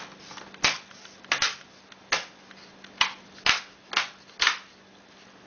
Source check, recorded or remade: recorded